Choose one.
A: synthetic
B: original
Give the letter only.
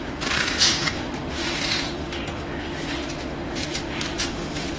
A